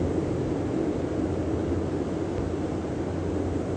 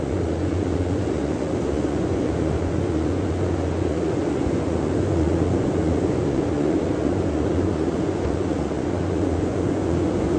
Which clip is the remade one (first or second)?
second